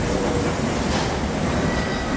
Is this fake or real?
real